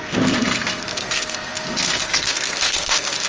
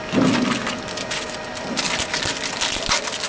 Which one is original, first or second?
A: second